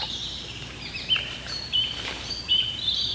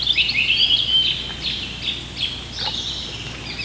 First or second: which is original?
second